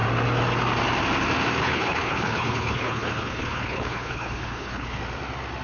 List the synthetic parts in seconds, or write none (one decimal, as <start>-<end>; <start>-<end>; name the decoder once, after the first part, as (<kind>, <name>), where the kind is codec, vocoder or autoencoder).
1.6-5.0 (codec, HILCodec)